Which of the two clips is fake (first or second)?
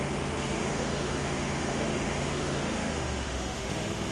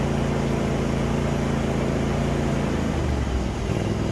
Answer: first